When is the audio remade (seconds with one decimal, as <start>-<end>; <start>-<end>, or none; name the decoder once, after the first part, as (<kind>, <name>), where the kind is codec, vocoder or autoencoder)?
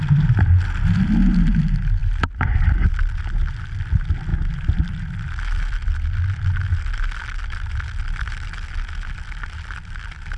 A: 2.0-2.9 (vocoder, BigVGAN v2); 4.3-5.1